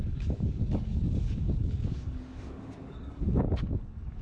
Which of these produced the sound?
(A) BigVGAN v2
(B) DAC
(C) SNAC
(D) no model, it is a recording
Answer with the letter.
B